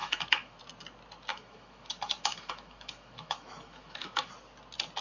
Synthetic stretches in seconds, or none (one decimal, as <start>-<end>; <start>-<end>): 0.0-0.6; 1.3-4.3